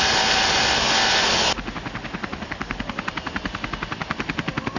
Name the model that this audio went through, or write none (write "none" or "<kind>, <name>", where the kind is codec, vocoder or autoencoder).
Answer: none